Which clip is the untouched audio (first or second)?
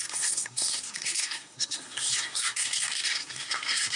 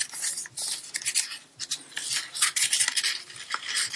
second